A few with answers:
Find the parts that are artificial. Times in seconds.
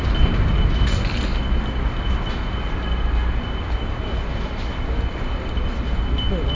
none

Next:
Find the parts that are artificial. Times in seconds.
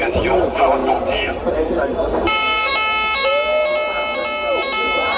1.9-2.7 (codec, DAC)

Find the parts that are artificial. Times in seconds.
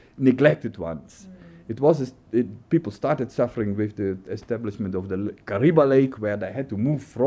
0.5-1.1 (codec, DAC); 5.4-6.7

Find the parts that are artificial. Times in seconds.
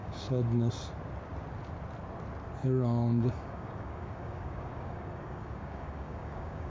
0.0-0.7 (codec, DAC); 2.6-6.7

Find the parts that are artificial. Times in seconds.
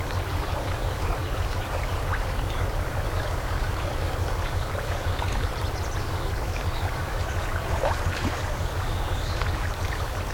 0.0-5.5 (codec, DAC); 6.0-10.3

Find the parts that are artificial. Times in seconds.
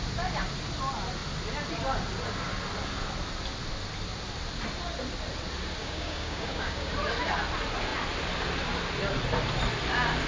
5.8-6.9 (codec, DAC)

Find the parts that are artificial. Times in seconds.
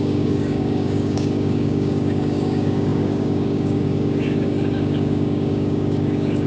0.0-6.5 (codec, DAC)